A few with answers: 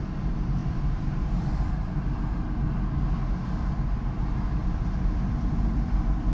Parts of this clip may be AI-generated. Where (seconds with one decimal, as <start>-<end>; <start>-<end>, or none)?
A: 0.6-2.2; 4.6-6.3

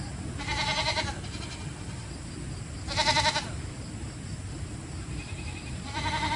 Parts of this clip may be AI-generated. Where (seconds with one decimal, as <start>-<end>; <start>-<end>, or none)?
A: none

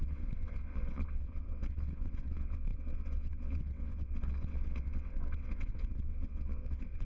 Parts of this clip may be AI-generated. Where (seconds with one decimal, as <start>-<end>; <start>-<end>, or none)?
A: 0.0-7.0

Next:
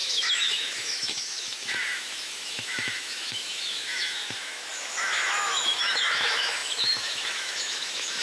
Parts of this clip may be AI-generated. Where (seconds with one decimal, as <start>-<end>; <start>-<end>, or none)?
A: 0.0-8.2

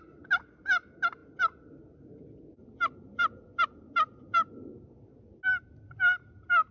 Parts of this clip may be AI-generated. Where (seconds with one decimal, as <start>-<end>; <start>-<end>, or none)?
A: none